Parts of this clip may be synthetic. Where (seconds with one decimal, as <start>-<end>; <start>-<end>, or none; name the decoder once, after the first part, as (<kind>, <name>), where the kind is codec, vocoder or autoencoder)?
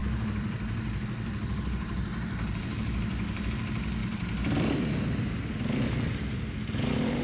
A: 0.0-3.5 (vocoder, BigVGAN v2); 4.0-4.8